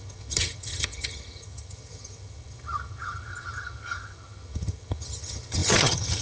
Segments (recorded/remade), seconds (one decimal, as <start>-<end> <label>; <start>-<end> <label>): 0.0-6.2 remade

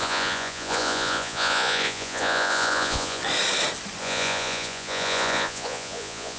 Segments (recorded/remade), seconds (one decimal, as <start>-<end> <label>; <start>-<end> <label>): 0.0-3.2 remade; 3.2-4.0 recorded; 4.0-6.4 remade

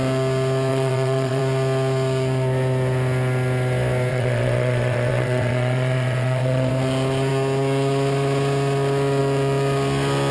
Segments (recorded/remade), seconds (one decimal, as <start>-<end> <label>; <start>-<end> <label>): 0.0-0.7 recorded; 0.7-1.4 remade; 1.4-4.1 recorded; 4.1-6.7 remade; 6.7-10.3 recorded